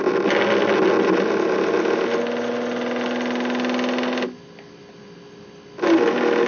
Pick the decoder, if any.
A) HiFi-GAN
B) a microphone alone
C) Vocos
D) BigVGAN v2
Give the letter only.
B